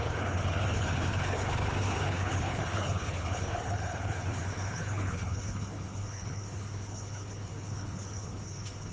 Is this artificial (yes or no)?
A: yes